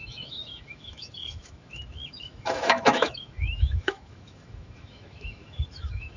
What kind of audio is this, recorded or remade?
remade